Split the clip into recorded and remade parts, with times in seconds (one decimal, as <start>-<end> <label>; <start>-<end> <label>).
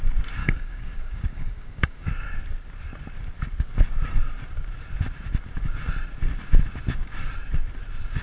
0.0-0.4 recorded; 0.4-2.1 remade; 2.1-8.2 recorded